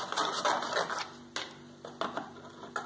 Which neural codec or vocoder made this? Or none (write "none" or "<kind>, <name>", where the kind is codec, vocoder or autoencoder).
none